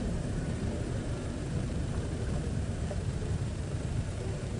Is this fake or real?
fake